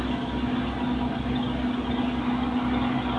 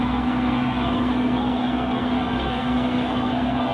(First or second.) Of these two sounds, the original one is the first